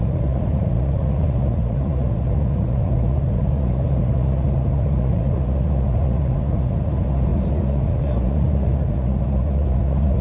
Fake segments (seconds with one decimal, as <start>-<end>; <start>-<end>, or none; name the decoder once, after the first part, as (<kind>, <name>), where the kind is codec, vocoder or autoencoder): 0.0-10.2 (vocoder, Vocos)

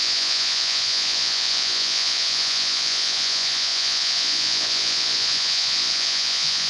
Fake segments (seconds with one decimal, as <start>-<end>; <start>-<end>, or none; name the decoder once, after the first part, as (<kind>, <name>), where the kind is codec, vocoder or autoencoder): 0.0-6.7 (vocoder, Vocos)

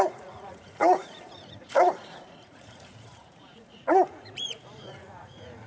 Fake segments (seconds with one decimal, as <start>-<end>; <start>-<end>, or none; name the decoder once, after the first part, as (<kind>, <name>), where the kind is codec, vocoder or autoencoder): 0.0-5.7 (vocoder, Vocos)

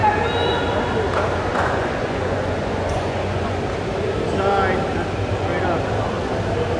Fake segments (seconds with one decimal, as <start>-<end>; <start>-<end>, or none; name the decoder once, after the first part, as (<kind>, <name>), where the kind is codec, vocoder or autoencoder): 1.5-3.6 (vocoder, Vocos)